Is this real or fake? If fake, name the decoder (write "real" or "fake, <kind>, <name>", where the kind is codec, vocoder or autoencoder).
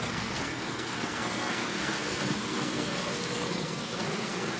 fake, codec, SNAC